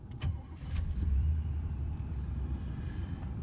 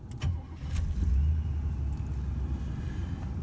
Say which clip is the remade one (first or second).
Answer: first